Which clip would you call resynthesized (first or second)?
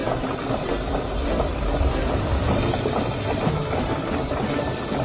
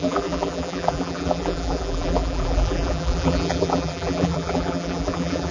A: second